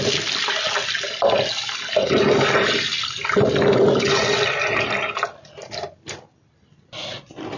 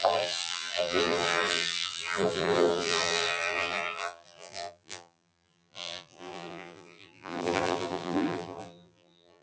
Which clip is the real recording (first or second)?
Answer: first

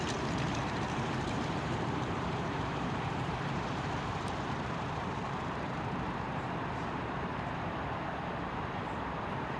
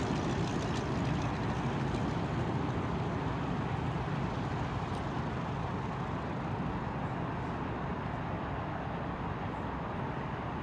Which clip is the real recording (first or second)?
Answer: second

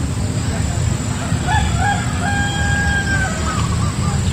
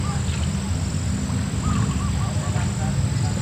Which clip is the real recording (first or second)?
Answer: second